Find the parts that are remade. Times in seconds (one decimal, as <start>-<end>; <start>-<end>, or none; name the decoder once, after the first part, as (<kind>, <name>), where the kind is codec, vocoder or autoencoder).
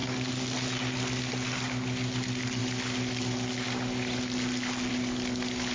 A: none